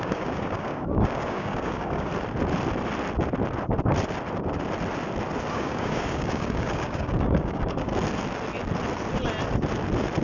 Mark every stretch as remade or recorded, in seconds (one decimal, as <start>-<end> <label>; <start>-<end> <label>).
0.0-2.1 remade; 2.1-5.5 recorded; 5.5-7.9 remade; 7.9-10.2 recorded